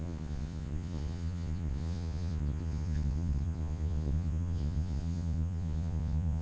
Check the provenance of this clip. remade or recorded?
remade